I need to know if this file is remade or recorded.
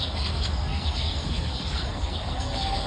remade